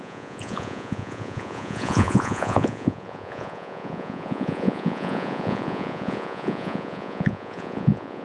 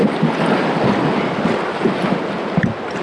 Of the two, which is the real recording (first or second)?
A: second